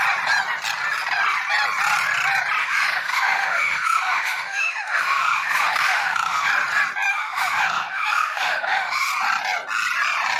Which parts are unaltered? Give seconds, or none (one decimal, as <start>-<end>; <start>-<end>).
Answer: 0.0-2.6; 6.5-7.1; 9.1-10.4